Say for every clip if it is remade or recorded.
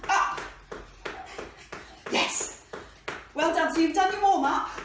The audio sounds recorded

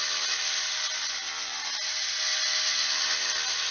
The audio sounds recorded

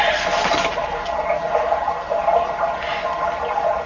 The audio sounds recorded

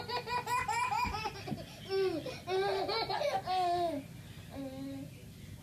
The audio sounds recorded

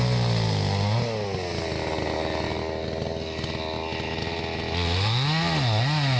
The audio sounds recorded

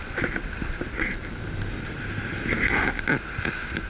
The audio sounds recorded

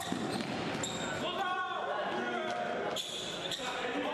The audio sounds recorded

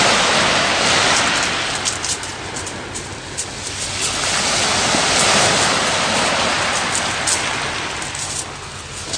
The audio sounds recorded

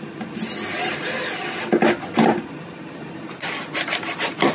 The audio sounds recorded